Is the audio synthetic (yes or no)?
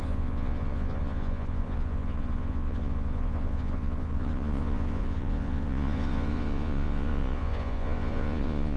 yes